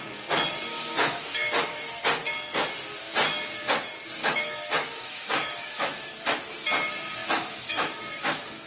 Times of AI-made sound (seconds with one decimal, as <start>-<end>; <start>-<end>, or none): 0.7-2.0; 4.2-6.1; 7.2-8.7

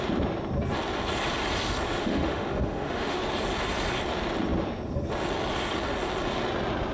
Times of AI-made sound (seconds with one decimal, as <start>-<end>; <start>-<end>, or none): 2.0-3.2

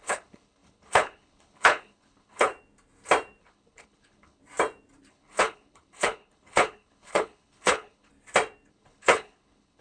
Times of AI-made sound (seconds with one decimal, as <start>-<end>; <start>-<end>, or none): 0.0-2.5; 3.4-4.4; 5.1-8.1; 8.7-9.8